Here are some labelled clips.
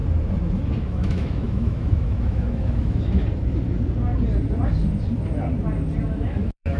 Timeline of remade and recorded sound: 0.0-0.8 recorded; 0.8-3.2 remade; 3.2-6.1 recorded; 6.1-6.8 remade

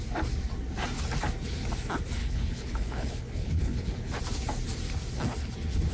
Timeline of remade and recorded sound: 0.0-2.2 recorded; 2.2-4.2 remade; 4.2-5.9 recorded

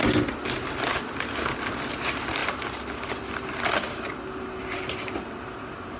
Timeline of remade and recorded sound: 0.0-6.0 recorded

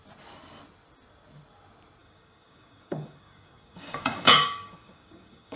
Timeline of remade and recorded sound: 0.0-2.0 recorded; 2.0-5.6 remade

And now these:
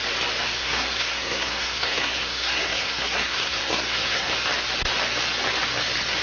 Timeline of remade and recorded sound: 0.0-0.6 recorded; 0.6-4.3 remade; 4.3-6.2 recorded

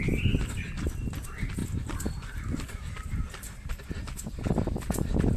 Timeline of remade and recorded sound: 0.0-5.4 recorded

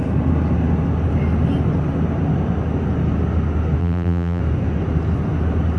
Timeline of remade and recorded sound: 0.0-3.8 recorded; 3.8-4.4 remade; 4.4-5.8 recorded

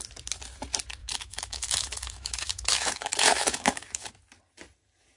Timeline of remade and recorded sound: 0.0-1.0 recorded; 1.0-4.1 remade; 4.1-5.2 recorded